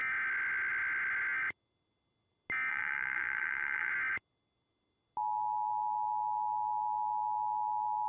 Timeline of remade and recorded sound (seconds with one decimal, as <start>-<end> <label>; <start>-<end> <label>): 0.0-2.7 recorded; 2.7-3.9 remade; 3.9-8.1 recorded